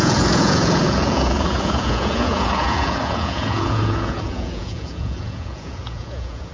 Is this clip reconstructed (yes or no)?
yes